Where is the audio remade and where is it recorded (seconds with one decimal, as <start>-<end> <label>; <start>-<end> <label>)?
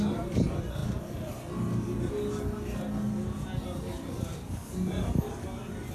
0.0-5.9 recorded